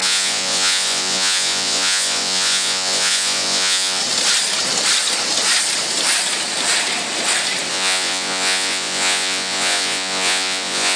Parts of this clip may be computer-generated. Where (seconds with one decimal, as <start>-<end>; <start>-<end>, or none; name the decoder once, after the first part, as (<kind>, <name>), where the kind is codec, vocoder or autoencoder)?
0.0-4.0 (vocoder, Vocos); 7.7-11.0